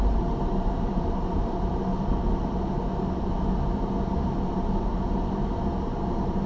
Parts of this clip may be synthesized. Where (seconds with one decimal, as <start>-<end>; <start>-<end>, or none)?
0.0-1.9; 4.5-4.9; 6.0-6.5